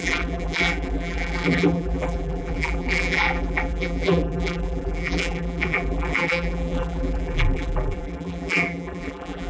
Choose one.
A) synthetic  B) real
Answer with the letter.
A